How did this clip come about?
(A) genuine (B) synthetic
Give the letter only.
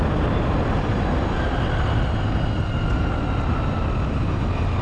A